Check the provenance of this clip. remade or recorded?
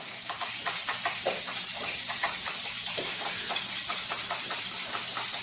remade